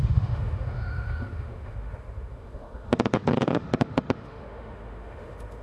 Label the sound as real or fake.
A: fake